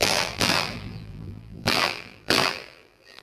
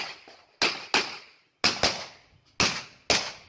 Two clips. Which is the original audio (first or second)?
second